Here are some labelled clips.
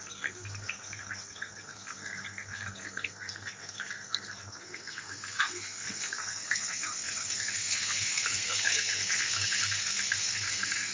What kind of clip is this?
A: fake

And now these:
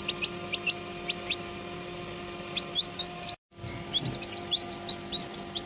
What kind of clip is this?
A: real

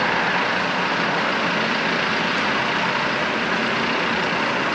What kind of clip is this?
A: real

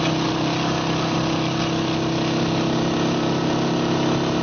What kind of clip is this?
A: real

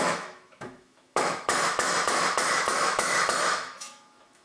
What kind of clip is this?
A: fake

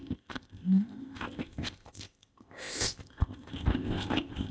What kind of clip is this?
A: fake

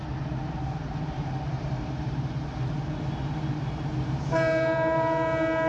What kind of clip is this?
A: fake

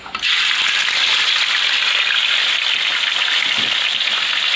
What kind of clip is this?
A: real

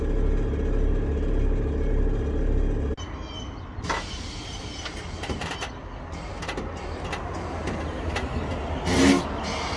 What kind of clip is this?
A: real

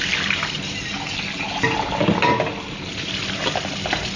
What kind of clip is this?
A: real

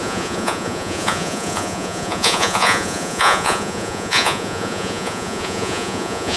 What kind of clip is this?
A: fake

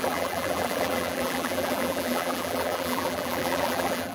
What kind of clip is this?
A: fake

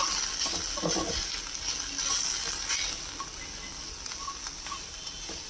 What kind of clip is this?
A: real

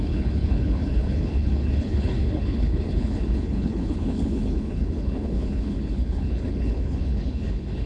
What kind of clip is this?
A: fake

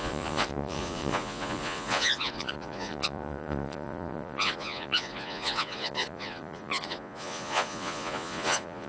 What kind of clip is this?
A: fake